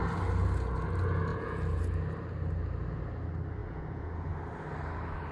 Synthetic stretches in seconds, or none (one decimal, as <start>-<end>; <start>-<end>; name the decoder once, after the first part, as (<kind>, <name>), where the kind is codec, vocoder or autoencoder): 1.3-1.8 (vocoder, Vocos); 3.6-4.3